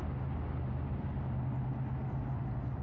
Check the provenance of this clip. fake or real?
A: real